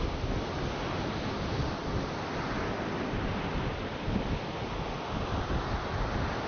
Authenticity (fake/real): real